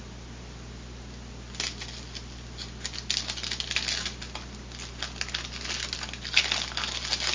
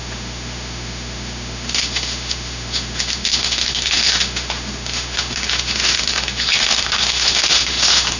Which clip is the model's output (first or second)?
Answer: second